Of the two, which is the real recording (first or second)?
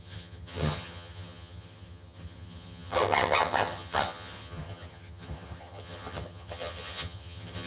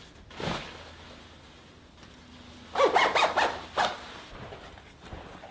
second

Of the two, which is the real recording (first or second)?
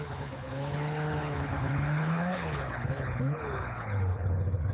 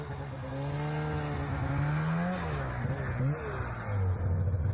second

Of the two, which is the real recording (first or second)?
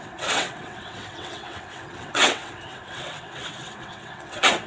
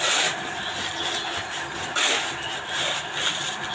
second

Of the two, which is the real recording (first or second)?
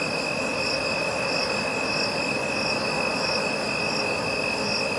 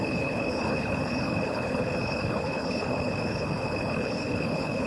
first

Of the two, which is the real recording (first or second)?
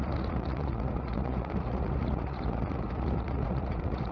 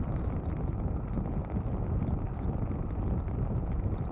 second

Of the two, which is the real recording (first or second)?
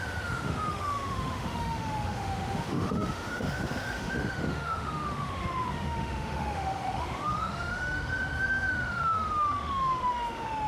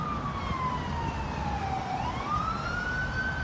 second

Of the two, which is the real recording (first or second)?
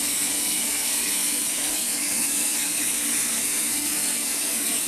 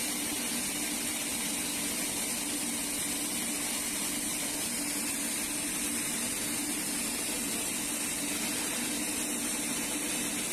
second